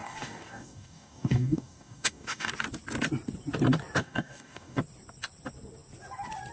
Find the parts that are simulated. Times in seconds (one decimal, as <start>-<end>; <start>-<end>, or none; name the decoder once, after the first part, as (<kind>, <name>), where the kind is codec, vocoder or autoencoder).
0.0-2.5 (codec, DAC); 4.0-4.8